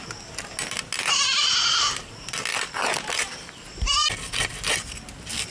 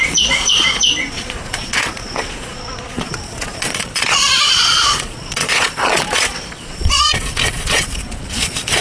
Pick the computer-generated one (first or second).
second